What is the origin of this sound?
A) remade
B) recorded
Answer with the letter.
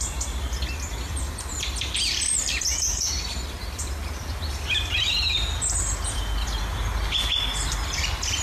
A